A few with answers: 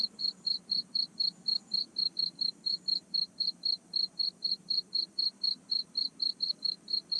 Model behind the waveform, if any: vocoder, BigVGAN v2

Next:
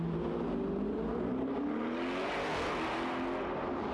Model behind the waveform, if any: none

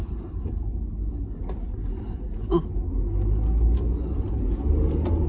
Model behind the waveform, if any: none